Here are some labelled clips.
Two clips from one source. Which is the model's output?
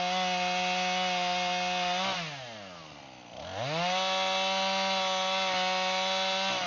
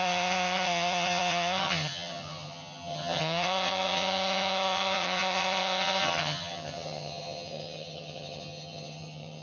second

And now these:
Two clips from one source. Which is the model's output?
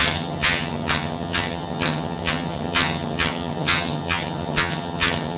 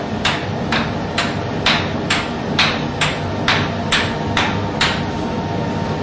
first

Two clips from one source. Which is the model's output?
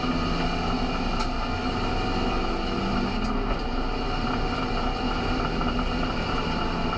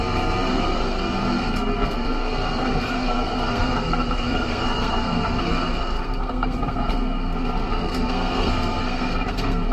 second